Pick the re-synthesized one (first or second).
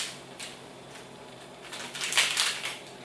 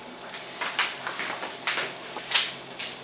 first